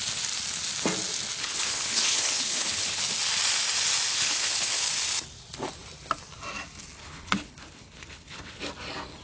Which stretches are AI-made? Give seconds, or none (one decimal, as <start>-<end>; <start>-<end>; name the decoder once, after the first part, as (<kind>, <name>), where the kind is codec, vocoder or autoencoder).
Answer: 1.4-3.0 (codec, HILCodec); 4.1-4.8; 7.0-8.6